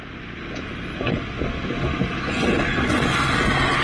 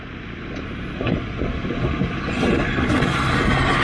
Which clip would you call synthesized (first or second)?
second